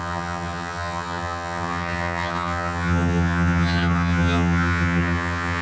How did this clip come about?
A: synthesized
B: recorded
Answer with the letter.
A